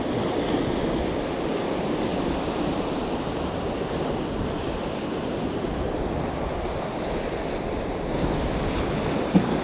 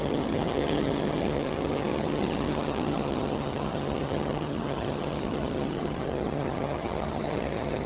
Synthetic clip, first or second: second